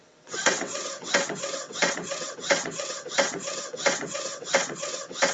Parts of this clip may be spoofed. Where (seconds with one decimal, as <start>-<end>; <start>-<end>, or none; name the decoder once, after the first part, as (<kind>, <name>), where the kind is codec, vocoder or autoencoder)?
0.0-5.3 (vocoder, WaveNeXt)